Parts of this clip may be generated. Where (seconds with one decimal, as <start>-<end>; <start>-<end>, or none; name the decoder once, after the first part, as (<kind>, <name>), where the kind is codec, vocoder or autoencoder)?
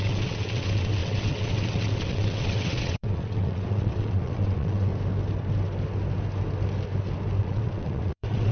0.0-4.9 (vocoder, WaveNeXt); 7.4-8.5